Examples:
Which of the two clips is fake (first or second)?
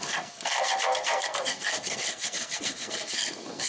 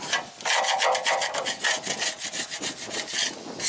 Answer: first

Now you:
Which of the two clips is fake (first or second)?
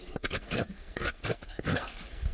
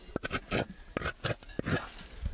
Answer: first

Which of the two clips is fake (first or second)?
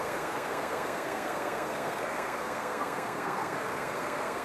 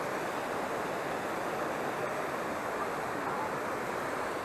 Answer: first